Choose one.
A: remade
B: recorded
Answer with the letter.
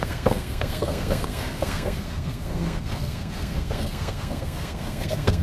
A